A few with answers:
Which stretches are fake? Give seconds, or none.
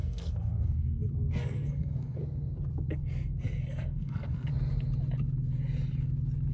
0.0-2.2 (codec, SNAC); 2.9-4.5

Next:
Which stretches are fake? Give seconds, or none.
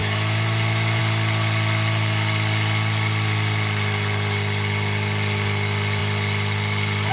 0.0-1.0 (autoencoder, DAC-VAE)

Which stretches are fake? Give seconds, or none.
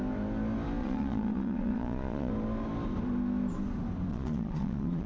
0.8-2.3 (vocoder, Vocos); 4.1-5.1